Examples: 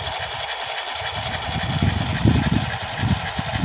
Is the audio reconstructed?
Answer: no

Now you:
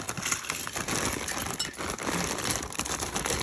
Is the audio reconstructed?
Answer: no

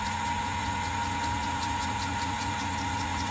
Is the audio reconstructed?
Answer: yes